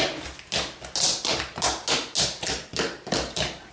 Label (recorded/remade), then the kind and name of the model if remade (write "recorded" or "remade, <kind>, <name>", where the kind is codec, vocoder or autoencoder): recorded